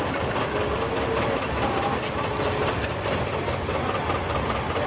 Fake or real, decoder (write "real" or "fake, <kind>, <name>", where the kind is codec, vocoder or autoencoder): real